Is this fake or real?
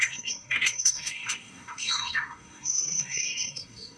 fake